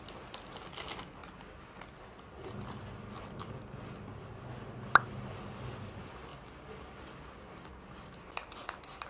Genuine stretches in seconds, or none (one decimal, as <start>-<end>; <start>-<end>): 0.0-9.1